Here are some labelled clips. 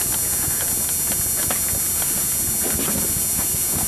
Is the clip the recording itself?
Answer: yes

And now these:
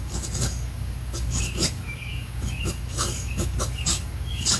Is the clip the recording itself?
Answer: no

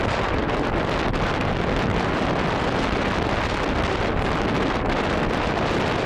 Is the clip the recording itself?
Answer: yes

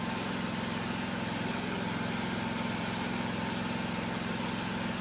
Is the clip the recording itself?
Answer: yes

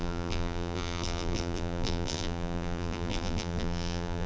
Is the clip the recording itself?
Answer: no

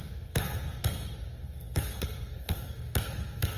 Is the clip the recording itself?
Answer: no